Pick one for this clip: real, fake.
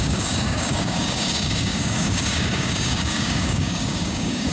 fake